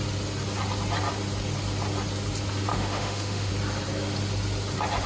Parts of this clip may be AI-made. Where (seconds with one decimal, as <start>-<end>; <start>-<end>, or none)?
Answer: 2.7-3.5